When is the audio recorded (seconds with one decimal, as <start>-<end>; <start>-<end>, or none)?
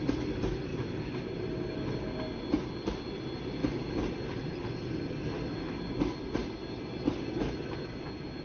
0.0-8.4